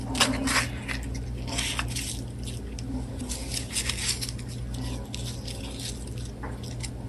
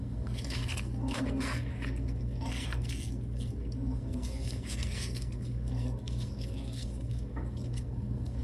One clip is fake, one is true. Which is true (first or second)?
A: first